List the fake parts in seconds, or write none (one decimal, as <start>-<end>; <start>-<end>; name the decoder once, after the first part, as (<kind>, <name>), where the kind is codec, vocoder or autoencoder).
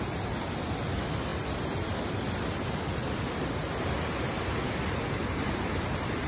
1.3-2.0 (vocoder, BigVGAN v2); 3.0-5.6